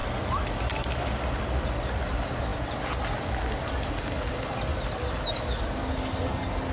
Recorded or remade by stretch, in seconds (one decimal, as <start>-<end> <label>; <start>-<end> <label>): 0.0-6.7 recorded